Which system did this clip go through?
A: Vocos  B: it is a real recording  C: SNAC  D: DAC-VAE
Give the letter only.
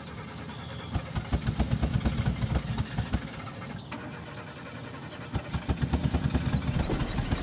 B